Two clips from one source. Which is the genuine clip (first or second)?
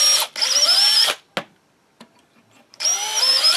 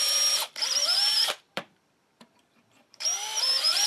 first